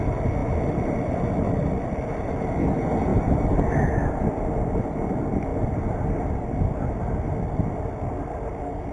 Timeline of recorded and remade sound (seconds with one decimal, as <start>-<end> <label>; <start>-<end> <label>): 0.0-0.4 recorded; 0.4-2.6 remade; 2.6-3.1 recorded; 3.1-4.1 remade; 4.1-5.5 recorded; 5.5-6.3 remade; 6.3-8.9 recorded